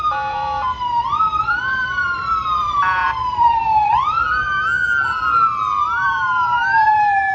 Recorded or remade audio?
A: remade